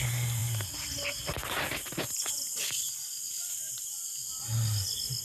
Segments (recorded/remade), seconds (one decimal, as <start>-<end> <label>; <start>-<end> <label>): 0.0-5.2 recorded